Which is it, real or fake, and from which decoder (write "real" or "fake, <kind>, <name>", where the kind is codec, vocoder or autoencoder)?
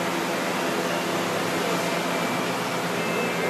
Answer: real